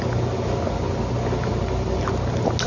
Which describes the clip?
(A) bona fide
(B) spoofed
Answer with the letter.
A